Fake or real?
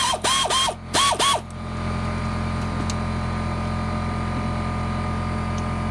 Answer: real